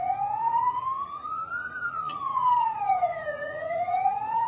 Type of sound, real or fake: fake